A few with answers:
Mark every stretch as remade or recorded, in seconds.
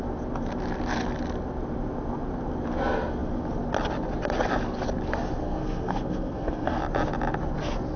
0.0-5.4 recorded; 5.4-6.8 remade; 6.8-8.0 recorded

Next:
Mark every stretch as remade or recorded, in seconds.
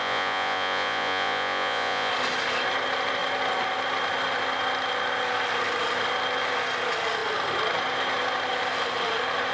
0.0-2.1 remade; 2.1-9.5 recorded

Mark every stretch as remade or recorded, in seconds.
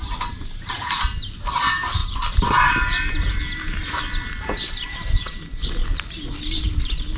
0.0-3.8 remade; 3.8-4.9 recorded; 4.9-5.8 remade; 5.8-7.2 recorded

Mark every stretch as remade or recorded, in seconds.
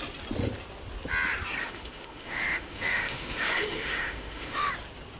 0.0-1.6 recorded; 1.6-4.7 remade; 4.7-5.2 recorded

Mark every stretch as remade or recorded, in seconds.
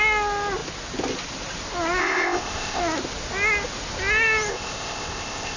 0.0-2.0 recorded; 2.0-2.8 remade; 2.8-4.5 recorded; 4.5-5.6 remade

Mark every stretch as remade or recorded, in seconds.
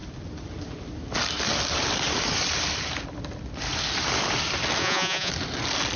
0.0-4.8 recorded; 4.8-5.3 remade; 5.3-6.0 recorded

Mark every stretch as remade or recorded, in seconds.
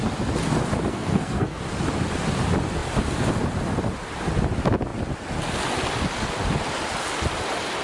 0.0-0.9 recorded; 0.9-1.6 remade; 1.6-7.8 recorded